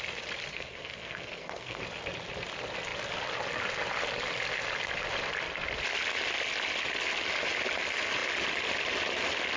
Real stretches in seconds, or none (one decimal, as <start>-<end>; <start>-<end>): 0.0-0.5; 1.8-9.6